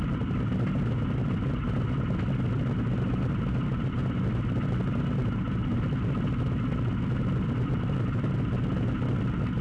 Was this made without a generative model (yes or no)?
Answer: yes